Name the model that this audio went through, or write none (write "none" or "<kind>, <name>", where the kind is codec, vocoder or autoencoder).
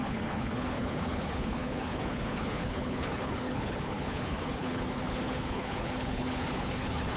codec, HILCodec